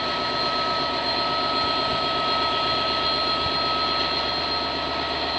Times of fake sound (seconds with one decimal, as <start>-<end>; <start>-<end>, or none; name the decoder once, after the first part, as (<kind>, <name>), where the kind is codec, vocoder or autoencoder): none